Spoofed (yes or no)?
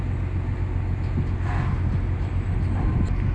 no